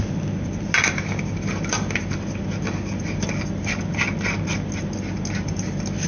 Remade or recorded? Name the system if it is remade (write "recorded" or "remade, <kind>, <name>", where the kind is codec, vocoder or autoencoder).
recorded